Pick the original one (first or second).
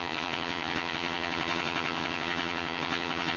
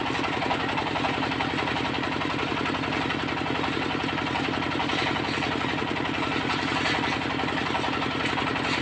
second